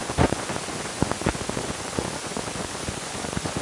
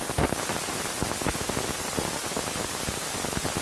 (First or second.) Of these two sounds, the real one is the second